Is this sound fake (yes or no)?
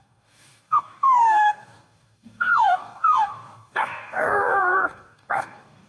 yes